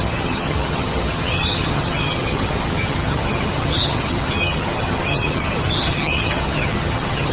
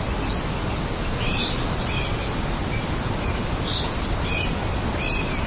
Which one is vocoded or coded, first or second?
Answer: first